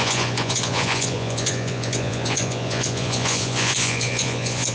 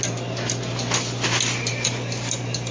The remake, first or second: first